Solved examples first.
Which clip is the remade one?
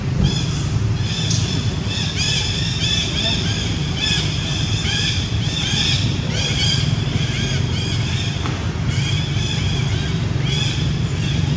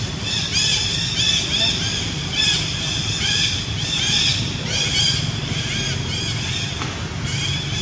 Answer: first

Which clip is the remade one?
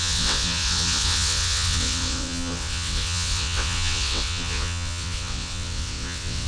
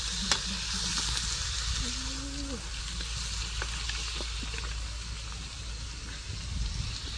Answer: first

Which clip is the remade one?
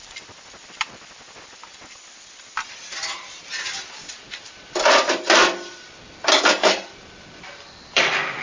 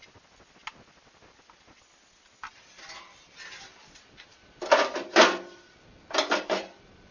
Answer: first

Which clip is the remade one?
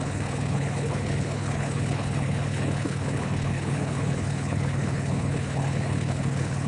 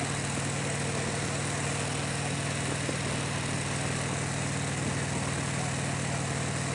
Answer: first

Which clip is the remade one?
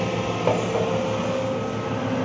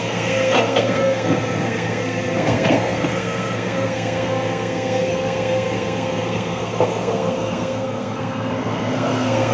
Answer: second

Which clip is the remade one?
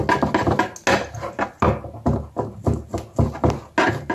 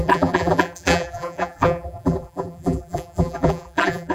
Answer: second